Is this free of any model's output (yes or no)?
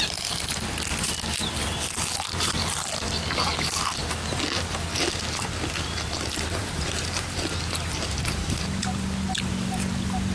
no